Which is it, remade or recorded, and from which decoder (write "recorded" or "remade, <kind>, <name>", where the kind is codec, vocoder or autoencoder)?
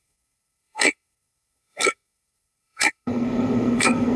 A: remade, codec, SNAC